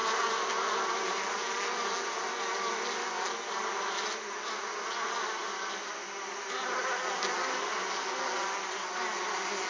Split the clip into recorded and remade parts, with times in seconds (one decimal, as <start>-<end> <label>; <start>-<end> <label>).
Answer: 0.0-9.7 recorded